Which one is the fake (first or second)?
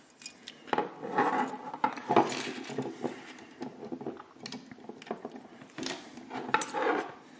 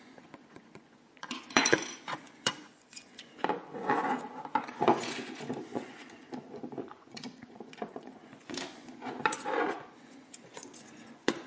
second